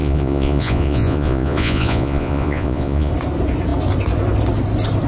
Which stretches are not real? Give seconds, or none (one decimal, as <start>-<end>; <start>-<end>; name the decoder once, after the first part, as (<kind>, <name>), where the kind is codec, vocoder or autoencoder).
0.0-3.1 (vocoder, Vocos)